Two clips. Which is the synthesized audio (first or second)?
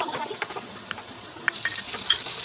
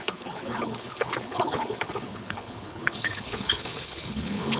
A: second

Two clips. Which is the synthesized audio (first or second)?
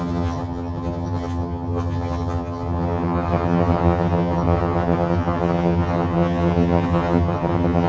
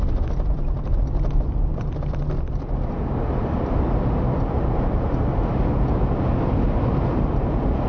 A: first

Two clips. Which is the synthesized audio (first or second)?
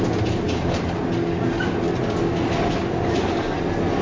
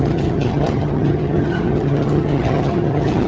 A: second